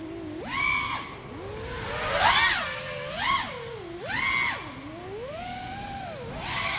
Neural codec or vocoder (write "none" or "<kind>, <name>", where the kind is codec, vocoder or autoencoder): none